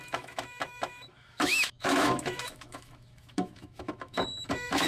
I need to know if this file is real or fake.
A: fake